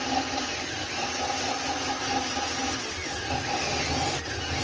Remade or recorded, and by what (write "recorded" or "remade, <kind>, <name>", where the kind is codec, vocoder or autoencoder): recorded